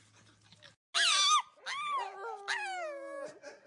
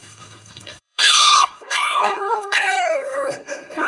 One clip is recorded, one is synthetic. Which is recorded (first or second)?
first